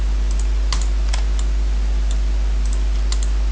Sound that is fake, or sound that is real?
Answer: real